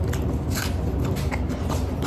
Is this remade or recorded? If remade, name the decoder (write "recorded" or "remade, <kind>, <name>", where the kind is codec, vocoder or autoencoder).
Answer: recorded